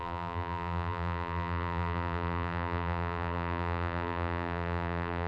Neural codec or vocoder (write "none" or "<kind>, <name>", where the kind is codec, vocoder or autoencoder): vocoder, BigVGAN v2